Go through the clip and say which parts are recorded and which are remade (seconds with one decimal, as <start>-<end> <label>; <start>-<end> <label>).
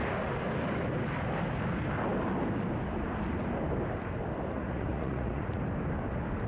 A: 0.0-4.5 recorded; 4.5-5.6 remade; 5.6-6.5 recorded